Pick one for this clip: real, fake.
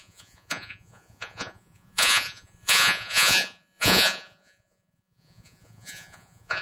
fake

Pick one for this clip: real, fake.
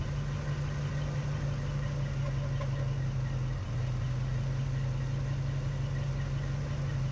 real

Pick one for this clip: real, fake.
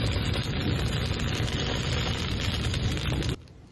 real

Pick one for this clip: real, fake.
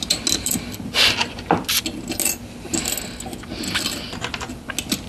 real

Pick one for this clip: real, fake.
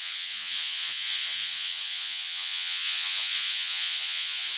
fake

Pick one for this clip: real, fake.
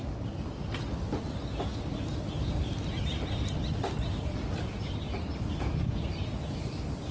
real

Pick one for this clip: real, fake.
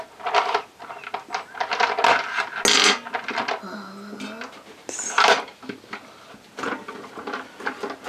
real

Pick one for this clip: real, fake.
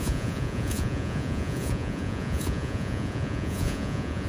fake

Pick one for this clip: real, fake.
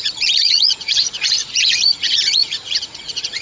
fake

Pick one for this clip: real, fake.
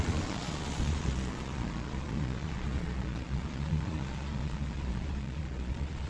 fake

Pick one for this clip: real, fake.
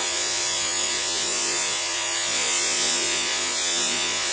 fake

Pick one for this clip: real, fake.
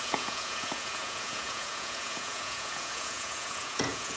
fake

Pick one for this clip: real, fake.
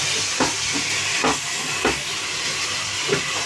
real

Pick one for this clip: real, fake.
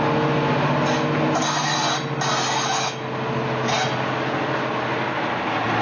real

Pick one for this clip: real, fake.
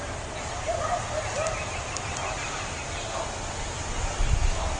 real